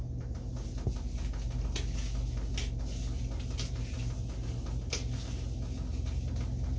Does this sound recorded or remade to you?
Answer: recorded